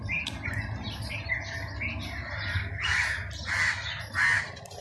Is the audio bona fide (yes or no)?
yes